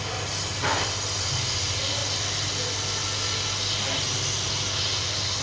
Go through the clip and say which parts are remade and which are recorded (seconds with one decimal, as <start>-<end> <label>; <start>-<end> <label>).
0.0-5.4 recorded